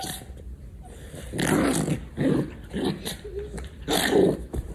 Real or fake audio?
fake